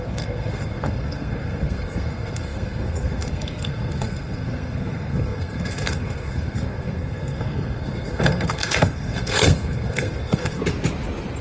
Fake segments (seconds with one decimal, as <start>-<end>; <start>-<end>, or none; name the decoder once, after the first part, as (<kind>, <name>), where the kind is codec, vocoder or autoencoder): 0.0-10.6 (codec, SNAC)